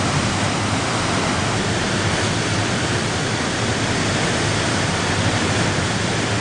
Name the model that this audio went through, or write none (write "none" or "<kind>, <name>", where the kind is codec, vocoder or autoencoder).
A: none